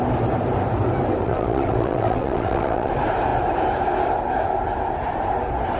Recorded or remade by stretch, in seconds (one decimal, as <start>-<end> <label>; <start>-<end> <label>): 0.0-1.2 recorded; 1.2-2.9 remade; 2.9-5.8 recorded